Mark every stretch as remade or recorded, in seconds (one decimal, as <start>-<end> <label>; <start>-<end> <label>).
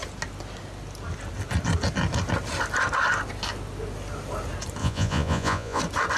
0.0-4.8 recorded; 4.8-5.8 remade; 5.8-6.2 recorded